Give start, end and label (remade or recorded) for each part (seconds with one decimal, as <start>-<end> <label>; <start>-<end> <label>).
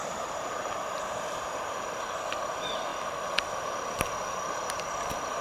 0.0-1.8 remade; 1.8-5.4 recorded